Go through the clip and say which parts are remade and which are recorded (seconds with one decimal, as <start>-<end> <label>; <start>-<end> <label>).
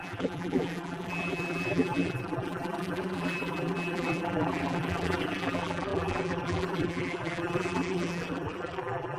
0.0-9.2 remade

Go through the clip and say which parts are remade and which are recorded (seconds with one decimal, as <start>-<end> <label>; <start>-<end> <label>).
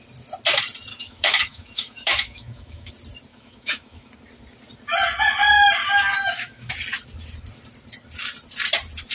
0.0-0.9 recorded; 0.9-2.9 remade; 2.9-3.3 recorded; 3.3-4.1 remade; 4.1-5.8 recorded; 5.8-6.7 remade; 6.7-9.1 recorded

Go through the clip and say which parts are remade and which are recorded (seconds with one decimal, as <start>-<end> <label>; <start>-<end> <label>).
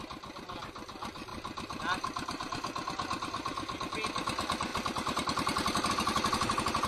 0.0-6.9 recorded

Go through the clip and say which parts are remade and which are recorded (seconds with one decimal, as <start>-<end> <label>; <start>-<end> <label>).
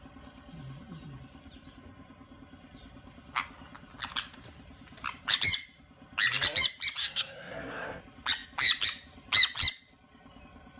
0.0-7.0 recorded; 7.0-8.0 remade; 8.0-10.8 recorded